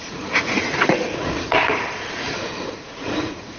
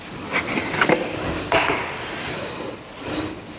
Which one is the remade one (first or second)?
first